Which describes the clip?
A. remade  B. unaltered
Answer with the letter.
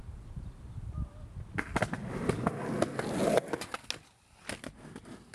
B